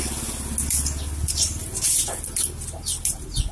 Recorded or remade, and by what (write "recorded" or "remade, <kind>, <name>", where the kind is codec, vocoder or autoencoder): recorded